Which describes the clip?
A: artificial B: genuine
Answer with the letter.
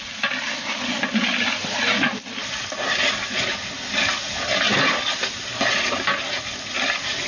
B